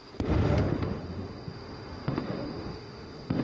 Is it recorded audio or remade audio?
remade